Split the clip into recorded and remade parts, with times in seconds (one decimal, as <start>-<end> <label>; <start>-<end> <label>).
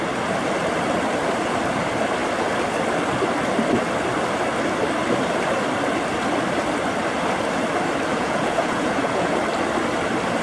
0.0-8.1 recorded; 8.1-9.4 remade; 9.4-10.4 recorded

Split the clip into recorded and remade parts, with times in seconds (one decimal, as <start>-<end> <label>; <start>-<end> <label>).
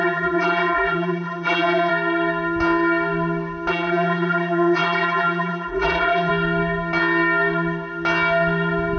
0.0-1.9 remade; 1.9-3.7 recorded; 3.7-6.3 remade; 6.3-9.0 recorded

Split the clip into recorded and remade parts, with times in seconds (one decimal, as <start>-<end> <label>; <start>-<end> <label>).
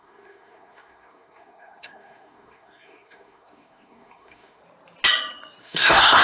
0.0-4.6 remade; 4.6-5.6 recorded; 5.6-6.2 remade